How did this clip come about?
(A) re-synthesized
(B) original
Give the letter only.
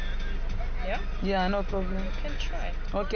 B